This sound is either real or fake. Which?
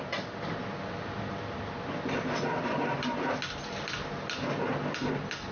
real